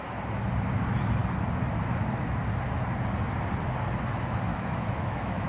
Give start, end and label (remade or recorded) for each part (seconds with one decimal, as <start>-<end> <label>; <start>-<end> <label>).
0.0-4.5 recorded; 4.5-5.5 remade